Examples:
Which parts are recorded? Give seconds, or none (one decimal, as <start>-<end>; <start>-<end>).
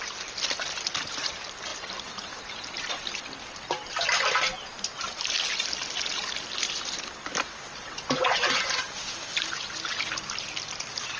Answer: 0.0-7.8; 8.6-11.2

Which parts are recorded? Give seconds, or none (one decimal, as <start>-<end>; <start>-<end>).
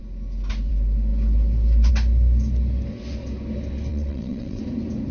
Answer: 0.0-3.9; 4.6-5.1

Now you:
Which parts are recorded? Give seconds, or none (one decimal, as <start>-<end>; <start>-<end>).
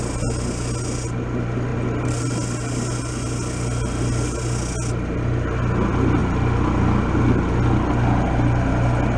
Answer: 0.0-9.2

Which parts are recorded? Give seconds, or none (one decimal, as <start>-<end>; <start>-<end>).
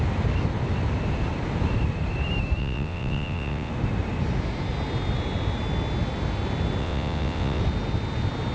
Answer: 0.0-2.6; 3.7-6.8; 7.6-8.5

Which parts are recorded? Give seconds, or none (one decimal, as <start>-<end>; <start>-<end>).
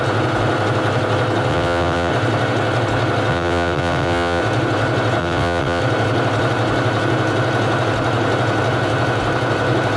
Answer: 0.0-1.5; 2.1-3.3; 4.4-5.2; 5.8-10.0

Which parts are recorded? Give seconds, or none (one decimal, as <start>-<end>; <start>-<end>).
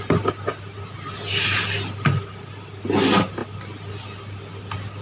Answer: 0.0-5.0